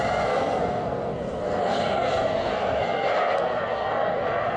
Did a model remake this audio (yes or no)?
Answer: yes